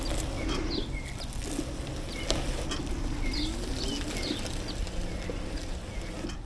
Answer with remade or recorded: recorded